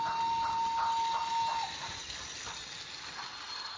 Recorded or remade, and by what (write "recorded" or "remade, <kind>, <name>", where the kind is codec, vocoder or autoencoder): recorded